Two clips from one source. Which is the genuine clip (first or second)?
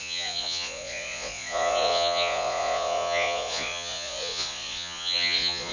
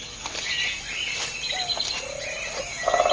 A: second